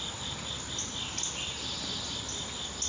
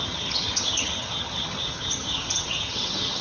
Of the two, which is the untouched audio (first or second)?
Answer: first